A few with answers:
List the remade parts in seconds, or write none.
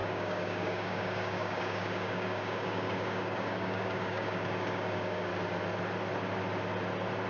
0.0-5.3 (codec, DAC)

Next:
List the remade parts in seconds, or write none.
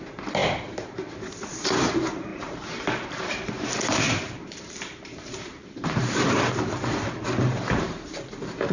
2.3-6.5 (vocoder, BigVGAN v2)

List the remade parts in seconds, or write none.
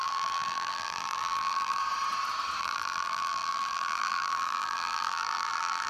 0.0-1.8 (vocoder, BigVGAN v2); 2.6-5.9